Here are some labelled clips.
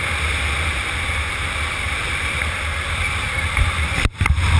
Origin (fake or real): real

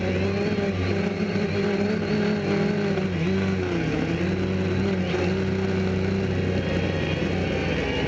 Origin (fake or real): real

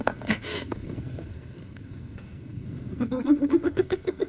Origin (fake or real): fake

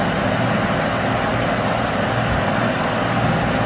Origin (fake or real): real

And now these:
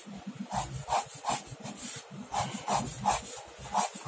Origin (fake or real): real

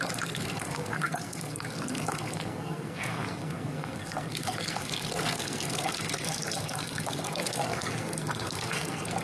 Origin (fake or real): fake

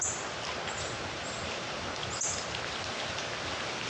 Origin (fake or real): real